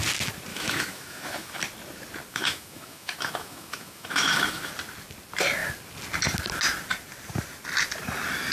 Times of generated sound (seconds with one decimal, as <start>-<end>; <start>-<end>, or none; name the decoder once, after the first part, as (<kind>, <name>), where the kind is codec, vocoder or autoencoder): 0.5-1.6 (autoencoder, DAC-VAE); 2.3-4.7